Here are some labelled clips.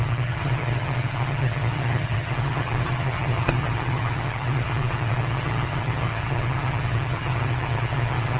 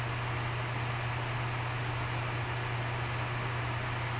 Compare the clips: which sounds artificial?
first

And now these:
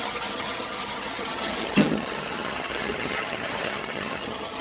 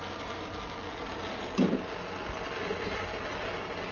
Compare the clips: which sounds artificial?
first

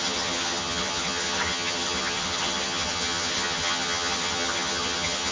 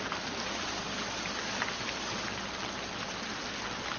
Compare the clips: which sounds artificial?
first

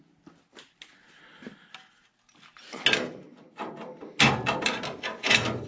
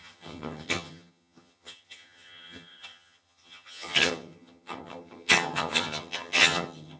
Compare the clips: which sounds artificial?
second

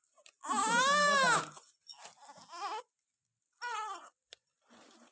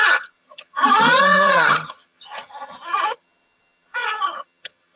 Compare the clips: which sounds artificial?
second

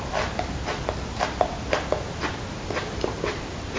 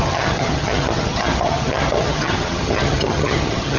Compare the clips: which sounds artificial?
second